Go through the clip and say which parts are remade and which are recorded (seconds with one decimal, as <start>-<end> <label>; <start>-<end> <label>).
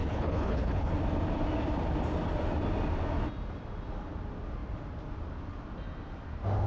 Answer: 0.0-0.9 remade; 0.9-6.7 recorded